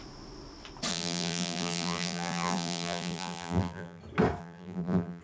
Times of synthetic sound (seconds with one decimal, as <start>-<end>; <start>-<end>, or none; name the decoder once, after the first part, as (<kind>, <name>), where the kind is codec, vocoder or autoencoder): 0.9-4.0 (vocoder, BigVGAN v2); 4.4-5.2